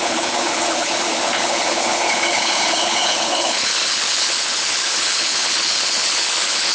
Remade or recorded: remade